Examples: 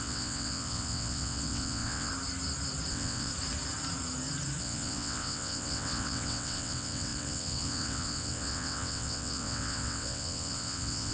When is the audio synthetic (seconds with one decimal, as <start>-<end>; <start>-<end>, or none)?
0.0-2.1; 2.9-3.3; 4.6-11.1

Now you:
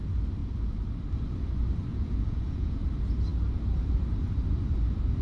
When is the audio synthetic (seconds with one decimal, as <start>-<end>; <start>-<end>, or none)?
1.9-2.9

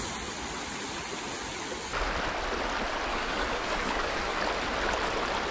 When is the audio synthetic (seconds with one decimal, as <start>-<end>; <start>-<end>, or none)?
3.1-4.4